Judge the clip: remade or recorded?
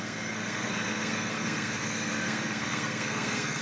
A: remade